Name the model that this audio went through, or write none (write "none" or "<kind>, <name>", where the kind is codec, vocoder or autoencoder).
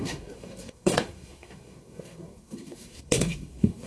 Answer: codec, SNAC